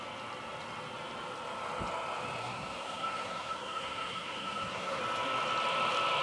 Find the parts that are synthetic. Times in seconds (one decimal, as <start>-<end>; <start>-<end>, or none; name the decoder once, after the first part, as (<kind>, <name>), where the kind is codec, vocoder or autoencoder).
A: 2.4-5.0 (codec, SNAC)